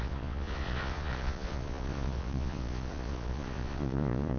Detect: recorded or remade remade